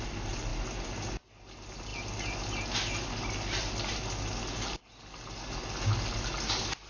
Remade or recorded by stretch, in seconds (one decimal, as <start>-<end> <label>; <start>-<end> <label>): 0.0-6.9 recorded